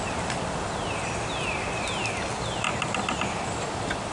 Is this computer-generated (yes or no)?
no